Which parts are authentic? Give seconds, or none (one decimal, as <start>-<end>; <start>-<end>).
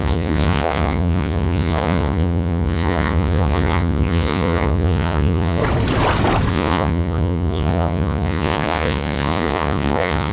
5.6-6.5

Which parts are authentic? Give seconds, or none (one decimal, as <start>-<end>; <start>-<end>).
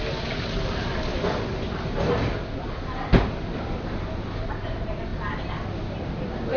0.0-6.6